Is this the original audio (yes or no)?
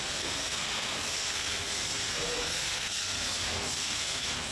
no